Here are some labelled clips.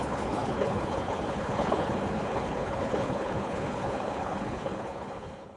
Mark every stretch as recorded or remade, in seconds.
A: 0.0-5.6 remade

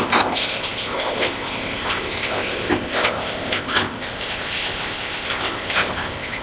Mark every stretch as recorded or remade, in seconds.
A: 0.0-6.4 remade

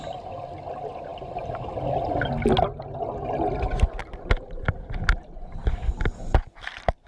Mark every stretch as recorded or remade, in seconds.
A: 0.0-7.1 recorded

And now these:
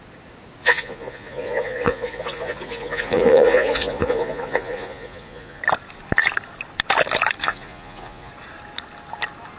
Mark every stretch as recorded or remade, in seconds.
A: 0.0-0.6 recorded; 0.6-5.6 remade; 5.6-7.4 recorded; 7.4-8.3 remade; 8.3-9.6 recorded

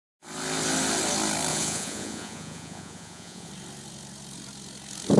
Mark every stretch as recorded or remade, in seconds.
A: 0.0-1.5 recorded; 1.5-3.5 remade; 3.5-5.2 recorded

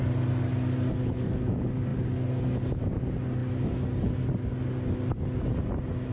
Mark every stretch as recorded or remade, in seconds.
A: 0.0-6.1 recorded

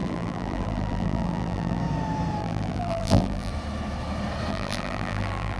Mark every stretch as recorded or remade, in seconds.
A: 0.0-1.8 remade; 1.8-2.4 recorded; 2.4-3.5 remade; 3.5-4.5 recorded; 4.5-5.6 remade